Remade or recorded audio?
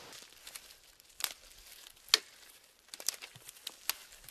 recorded